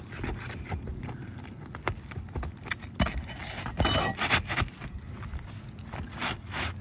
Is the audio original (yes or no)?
yes